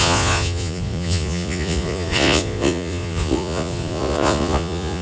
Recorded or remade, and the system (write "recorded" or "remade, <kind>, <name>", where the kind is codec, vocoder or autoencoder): remade, vocoder, Vocos